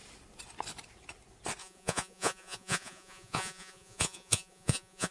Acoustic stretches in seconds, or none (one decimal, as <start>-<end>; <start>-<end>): 0.0-1.6